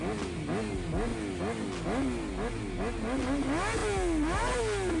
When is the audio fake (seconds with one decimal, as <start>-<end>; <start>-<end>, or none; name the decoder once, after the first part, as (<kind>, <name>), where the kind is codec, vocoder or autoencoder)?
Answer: none